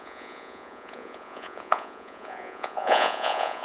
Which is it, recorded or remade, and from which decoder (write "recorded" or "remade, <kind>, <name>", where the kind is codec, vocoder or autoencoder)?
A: remade, vocoder, Vocos